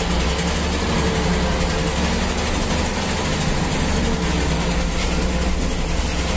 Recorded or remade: recorded